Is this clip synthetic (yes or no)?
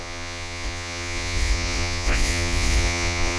yes